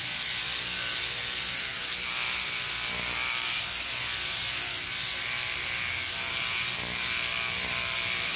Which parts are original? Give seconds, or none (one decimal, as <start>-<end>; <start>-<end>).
0.0-8.4